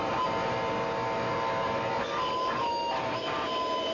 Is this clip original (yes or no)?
yes